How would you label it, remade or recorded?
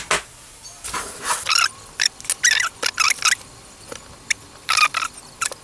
recorded